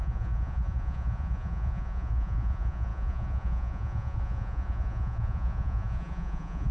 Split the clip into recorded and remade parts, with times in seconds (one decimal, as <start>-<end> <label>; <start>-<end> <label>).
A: 0.0-6.7 remade